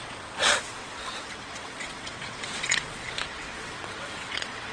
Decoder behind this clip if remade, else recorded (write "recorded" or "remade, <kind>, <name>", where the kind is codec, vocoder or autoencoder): remade, vocoder, WaveNeXt